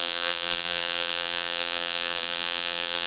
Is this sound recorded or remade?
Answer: remade